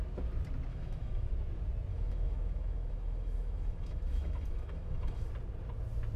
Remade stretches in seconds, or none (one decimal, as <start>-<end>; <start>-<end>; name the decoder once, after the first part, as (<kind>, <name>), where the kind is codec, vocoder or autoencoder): 0.7-1.3 (autoencoder, DAC-VAE); 1.9-5.3